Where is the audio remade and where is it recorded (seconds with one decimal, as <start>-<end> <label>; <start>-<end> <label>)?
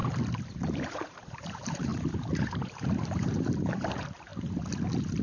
0.0-0.6 recorded; 0.6-4.3 remade; 4.3-5.2 recorded